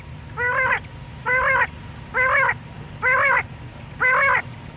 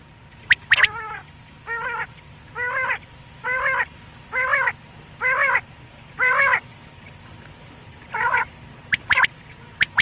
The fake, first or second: second